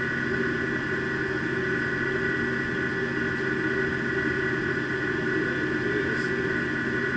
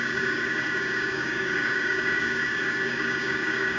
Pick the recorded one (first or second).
first